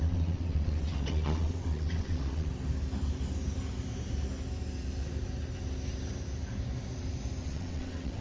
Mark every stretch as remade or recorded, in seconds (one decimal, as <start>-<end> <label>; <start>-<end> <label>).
0.0-2.5 remade; 2.5-7.4 recorded; 7.4-8.2 remade